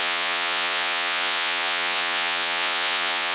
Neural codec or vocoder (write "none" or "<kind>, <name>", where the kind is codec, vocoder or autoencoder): vocoder, Vocos